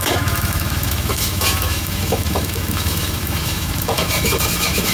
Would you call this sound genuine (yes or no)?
no